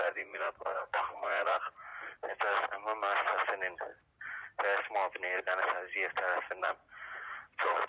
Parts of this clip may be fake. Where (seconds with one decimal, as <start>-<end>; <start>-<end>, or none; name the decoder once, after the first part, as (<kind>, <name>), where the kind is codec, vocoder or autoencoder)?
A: 0.0-1.9 (vocoder, Vocos); 6.6-7.9